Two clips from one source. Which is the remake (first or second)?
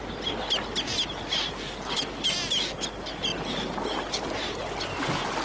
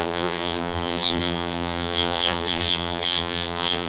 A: second